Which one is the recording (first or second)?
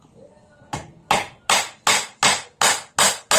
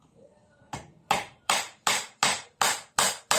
first